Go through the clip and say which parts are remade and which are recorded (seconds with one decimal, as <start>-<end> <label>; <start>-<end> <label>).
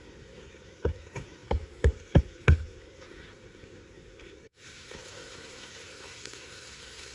0.0-7.1 remade